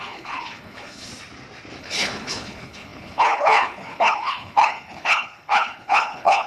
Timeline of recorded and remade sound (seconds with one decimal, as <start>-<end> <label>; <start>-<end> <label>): 0.0-1.1 remade; 1.1-1.8 recorded; 1.8-6.5 remade